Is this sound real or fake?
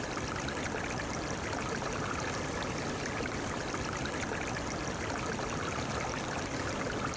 real